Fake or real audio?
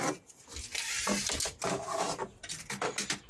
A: real